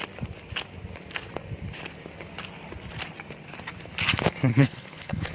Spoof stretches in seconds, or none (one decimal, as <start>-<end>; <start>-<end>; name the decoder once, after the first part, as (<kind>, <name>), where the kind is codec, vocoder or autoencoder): 4.5-5.3 (codec, HILCodec)